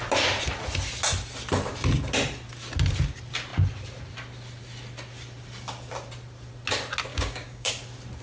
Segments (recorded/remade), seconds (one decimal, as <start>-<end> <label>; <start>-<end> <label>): 0.0-7.1 recorded; 7.1-7.7 remade; 7.7-8.2 recorded